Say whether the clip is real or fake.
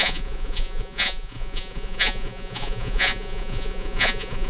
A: fake